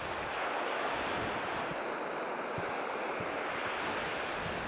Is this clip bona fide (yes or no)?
yes